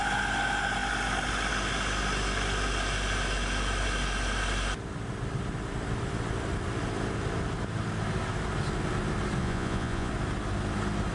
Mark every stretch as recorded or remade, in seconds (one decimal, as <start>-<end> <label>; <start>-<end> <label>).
0.0-9.4 recorded; 9.4-10.1 remade; 10.1-11.1 recorded